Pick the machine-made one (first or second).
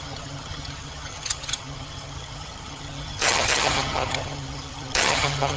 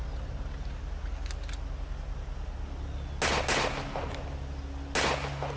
first